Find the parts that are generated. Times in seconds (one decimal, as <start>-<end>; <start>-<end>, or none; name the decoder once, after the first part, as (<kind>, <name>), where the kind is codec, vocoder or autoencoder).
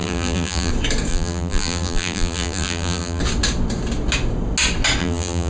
0.0-0.7 (vocoder, BigVGAN v2); 1.1-3.2; 5.0-5.5